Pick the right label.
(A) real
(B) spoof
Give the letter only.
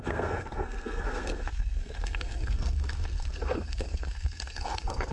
B